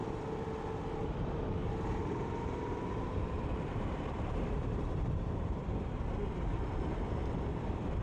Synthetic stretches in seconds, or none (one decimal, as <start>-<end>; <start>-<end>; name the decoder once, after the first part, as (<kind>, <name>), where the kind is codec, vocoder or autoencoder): 1.6-6.0 (vocoder, BigVGAN v2); 7.5-8.0